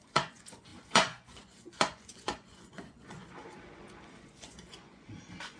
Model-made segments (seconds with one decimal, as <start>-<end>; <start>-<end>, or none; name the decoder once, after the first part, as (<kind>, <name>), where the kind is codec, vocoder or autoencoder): 0.0-5.6 (vocoder, Vocos)